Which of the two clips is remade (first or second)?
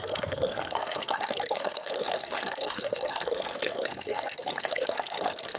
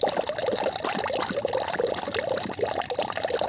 first